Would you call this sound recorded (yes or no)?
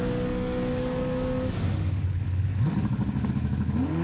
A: no